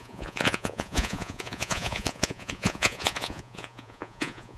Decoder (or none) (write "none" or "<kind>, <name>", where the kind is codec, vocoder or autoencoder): vocoder, Vocos